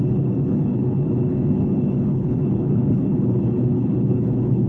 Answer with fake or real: fake